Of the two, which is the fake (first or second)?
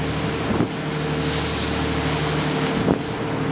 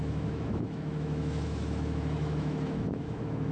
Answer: second